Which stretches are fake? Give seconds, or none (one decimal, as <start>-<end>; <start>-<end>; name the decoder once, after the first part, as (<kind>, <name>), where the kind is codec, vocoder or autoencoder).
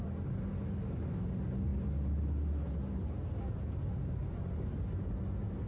none